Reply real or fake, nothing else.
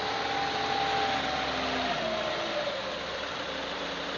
real